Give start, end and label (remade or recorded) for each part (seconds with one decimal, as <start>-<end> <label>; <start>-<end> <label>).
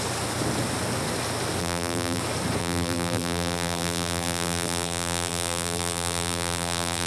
0.0-1.6 recorded; 1.6-2.2 remade; 2.2-2.6 recorded; 2.6-7.1 remade